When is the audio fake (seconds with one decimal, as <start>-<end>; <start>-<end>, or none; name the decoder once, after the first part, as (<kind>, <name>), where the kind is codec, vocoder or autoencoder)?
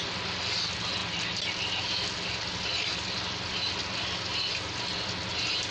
none